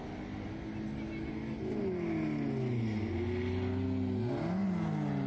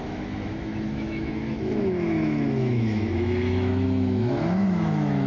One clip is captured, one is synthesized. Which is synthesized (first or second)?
second